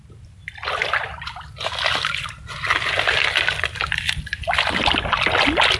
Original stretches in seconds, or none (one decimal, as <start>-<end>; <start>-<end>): 0.0-5.8